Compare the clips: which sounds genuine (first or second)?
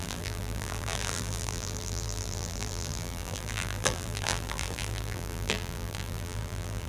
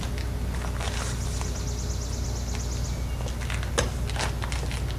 second